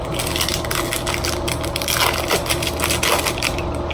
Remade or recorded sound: recorded